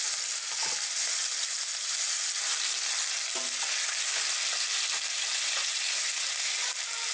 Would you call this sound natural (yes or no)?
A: yes